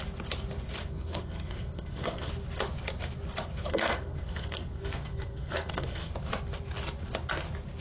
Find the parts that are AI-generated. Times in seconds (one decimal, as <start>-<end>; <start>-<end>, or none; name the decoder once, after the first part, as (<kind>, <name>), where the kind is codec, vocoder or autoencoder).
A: 0.8-2.3 (codec, SNAC); 3.6-6.1